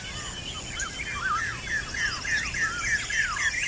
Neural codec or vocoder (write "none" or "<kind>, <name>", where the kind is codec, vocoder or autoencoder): none